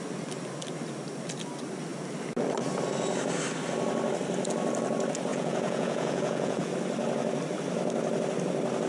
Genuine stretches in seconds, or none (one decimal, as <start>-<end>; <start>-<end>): 0.0-5.3; 6.7-8.9

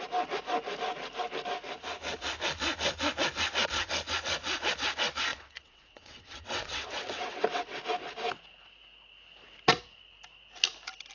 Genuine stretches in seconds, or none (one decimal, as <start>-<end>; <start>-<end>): 0.0-5.3; 7.8-11.1

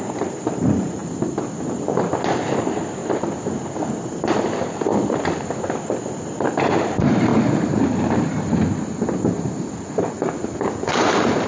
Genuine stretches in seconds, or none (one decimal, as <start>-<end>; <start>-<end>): 1.0-2.4; 3.0-4.1; 4.9-6.4; 7.3-8.3

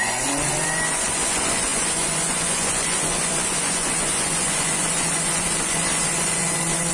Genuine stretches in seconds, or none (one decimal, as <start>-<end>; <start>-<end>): none